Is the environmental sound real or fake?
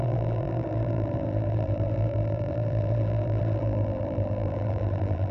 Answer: fake